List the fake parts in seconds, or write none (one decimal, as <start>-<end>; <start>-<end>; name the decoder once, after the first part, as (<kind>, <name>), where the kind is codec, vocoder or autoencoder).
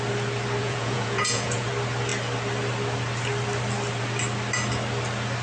0.6-1.7 (vocoder, Vocos)